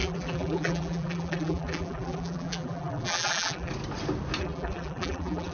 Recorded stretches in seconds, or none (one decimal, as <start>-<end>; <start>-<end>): 3.7-4.4